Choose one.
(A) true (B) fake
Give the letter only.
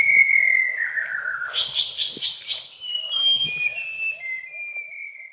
A